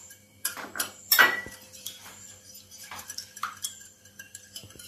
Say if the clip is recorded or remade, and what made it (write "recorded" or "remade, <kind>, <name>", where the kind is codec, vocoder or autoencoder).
remade, vocoder, BigVGAN v2